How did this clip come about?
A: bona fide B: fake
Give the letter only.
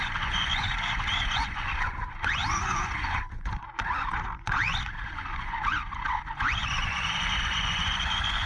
B